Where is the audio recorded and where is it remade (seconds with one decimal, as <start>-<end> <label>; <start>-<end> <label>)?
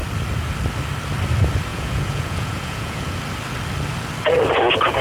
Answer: 0.0-1.7 recorded; 1.7-3.2 remade; 3.2-5.0 recorded